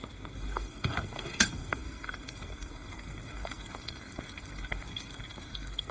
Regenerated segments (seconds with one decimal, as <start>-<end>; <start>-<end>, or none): 0.0-5.9

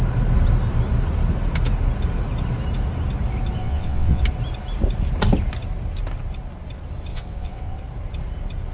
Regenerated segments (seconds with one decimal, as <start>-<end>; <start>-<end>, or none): 3.6-4.2; 7.1-7.8

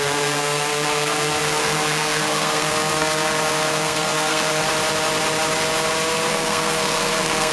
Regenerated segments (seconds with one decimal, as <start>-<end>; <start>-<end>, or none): 0.0-4.6; 6.3-7.5

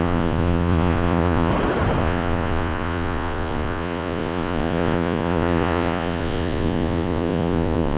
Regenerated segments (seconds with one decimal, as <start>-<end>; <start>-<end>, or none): 0.0-1.5; 2.0-8.0